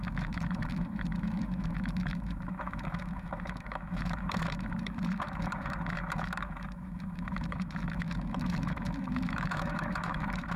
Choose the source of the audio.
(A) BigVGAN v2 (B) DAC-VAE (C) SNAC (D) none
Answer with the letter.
B